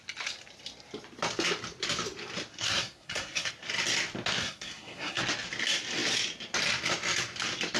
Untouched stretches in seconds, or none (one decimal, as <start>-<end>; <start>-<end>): 0.0-2.5; 3.5-4.4; 5.2-7.8